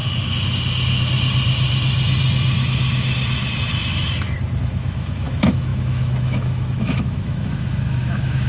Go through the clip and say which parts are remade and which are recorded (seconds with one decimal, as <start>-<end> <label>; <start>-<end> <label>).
0.0-4.6 recorded; 4.6-8.5 remade

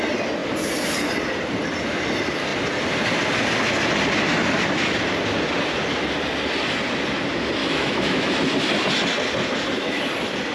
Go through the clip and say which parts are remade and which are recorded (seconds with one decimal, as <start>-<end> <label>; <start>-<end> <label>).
0.0-7.6 recorded; 7.6-8.3 remade; 8.3-10.5 recorded